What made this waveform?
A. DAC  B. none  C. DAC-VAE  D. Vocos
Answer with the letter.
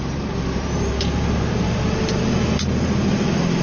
B